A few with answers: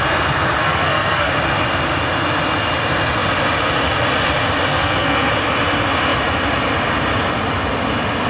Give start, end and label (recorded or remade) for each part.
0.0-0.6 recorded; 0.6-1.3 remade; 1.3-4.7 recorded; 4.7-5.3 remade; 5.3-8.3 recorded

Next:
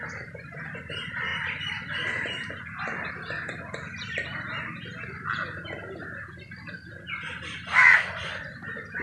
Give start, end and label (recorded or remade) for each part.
0.0-9.0 recorded